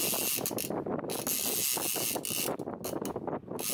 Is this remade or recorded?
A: recorded